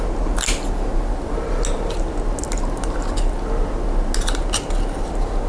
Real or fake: real